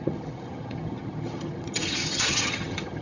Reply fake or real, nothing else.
fake